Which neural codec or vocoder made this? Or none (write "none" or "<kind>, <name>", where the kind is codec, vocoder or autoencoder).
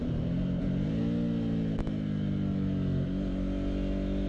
none